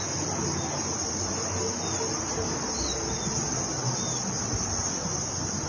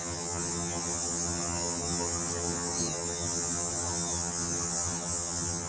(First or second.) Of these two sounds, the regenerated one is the second